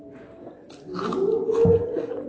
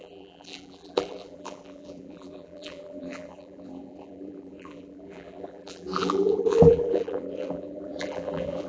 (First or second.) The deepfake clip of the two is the second